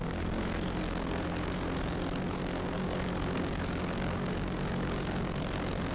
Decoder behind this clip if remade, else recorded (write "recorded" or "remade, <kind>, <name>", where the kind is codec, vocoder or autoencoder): remade, codec, DAC